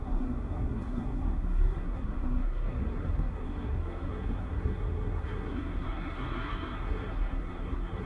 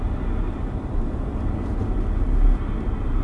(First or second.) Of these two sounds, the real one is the second